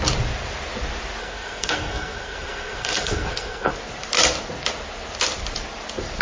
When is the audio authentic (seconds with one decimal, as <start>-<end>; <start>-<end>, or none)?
0.0-1.2; 3.7-6.2